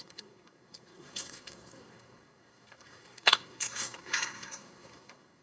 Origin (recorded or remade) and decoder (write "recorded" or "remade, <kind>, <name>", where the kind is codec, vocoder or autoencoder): remade, codec, SNAC